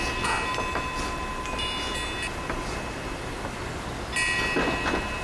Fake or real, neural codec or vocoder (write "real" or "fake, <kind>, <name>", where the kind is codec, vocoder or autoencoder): real